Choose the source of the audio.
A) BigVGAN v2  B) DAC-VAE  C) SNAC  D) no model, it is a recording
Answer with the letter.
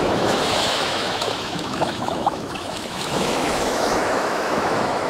B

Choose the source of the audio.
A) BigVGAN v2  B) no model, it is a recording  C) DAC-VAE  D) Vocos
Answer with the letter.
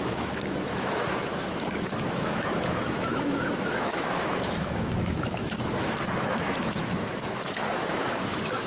C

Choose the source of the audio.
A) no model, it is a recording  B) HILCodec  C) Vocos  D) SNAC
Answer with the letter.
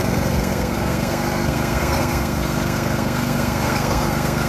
D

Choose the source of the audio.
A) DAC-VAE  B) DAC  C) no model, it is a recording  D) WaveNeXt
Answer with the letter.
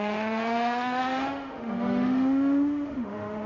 A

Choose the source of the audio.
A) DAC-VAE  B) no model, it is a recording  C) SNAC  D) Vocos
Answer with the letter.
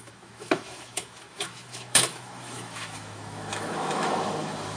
A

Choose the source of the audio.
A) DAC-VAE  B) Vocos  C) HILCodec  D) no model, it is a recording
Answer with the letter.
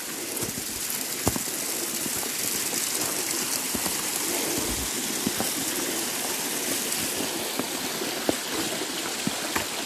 D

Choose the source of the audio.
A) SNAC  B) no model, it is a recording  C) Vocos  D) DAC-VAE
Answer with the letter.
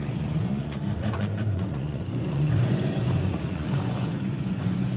C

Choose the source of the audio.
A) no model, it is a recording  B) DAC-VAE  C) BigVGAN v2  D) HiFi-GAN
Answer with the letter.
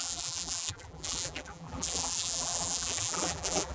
C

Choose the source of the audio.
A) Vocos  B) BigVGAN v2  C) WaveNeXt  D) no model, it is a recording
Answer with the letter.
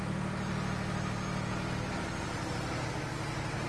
D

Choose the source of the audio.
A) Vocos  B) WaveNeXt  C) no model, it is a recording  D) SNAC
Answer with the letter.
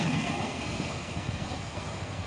D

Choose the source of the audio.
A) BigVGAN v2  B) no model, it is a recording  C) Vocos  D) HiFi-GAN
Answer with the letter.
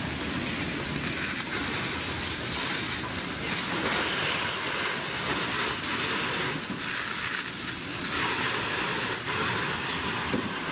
B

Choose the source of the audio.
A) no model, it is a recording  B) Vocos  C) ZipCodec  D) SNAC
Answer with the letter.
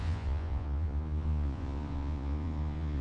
B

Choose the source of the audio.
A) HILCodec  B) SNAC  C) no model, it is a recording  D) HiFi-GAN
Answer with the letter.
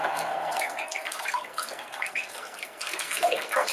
B